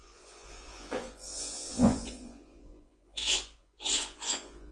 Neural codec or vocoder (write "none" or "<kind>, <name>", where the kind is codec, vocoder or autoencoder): vocoder, Vocos